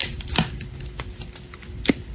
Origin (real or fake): real